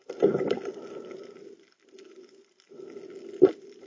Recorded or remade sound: recorded